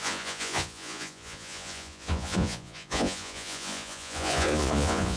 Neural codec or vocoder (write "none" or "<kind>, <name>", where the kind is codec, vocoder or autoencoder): vocoder, Vocos